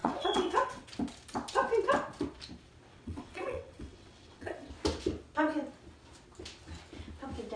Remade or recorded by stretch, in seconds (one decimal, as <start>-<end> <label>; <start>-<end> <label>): 0.0-0.9 remade; 0.9-2.9 recorded; 2.9-4.7 remade; 4.7-7.6 recorded